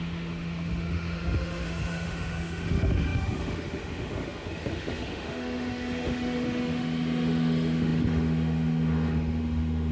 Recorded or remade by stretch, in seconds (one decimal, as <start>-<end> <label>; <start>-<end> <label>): 0.0-9.9 remade